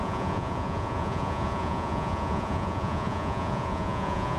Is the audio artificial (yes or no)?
yes